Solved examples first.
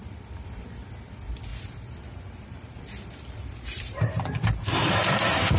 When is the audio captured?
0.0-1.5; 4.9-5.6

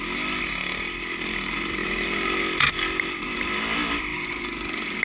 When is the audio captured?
0.0-4.1

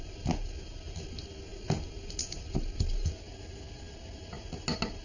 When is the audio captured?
0.0-5.0

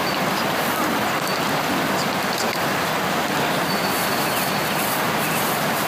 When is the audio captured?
none

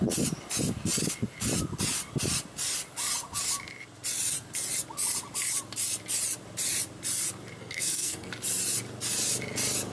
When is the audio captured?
0.0-7.6; 8.3-9.9